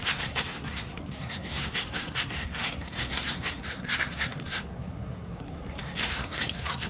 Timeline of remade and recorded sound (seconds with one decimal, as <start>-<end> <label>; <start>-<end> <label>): 0.0-6.9 remade